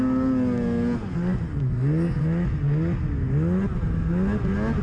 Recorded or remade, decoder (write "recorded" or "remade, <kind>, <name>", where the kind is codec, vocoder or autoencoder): recorded